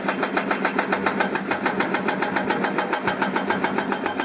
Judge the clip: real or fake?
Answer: real